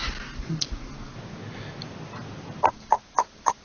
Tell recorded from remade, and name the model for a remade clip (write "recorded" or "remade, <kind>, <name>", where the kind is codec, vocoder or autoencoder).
recorded